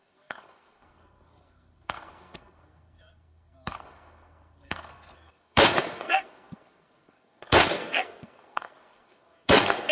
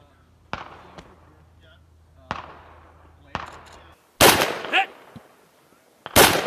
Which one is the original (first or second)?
second